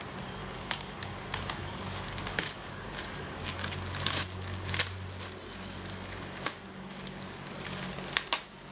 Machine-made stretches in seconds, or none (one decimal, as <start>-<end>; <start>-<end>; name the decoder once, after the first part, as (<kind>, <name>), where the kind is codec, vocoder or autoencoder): 0.4-4.7 (codec, DAC); 5.9-7.8